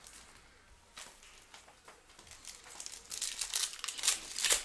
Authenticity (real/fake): real